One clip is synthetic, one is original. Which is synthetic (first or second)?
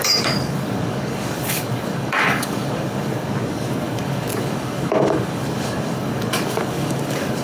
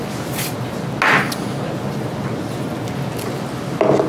first